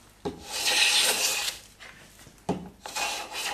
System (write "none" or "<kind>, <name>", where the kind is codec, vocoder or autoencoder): none